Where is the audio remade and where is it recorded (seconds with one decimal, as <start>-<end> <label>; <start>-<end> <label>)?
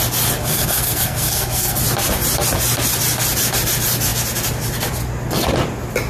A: 0.0-0.4 recorded; 0.4-1.8 remade; 1.8-6.1 recorded